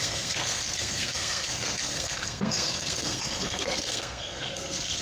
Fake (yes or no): yes